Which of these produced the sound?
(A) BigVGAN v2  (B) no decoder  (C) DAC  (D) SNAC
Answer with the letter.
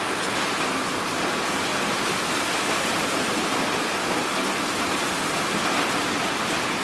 B